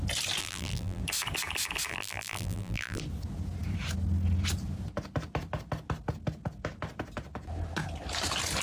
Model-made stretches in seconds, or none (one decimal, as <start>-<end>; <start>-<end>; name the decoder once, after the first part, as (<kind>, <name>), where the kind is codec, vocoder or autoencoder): 0.4-1.0 (vocoder, BigVGAN v2); 1.9-3.0